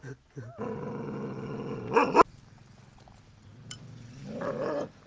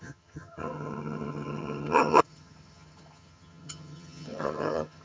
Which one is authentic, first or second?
first